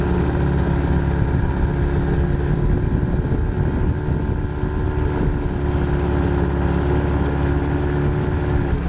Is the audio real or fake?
real